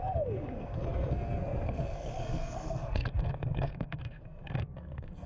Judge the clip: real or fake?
fake